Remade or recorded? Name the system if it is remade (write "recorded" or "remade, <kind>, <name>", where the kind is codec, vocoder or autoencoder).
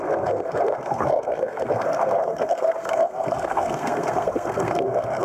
remade, codec, SNAC